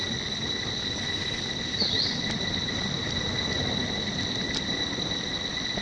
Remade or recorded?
recorded